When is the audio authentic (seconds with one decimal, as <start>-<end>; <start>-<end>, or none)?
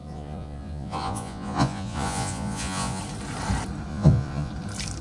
3.0-3.9; 4.5-5.0